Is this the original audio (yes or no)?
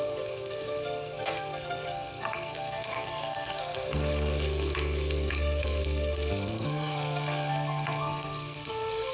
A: no